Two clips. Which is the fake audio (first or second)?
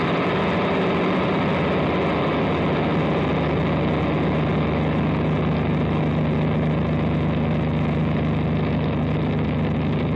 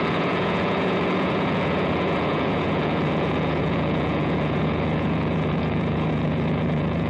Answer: second